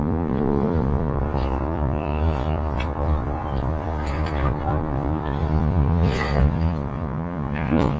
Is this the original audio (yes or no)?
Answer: no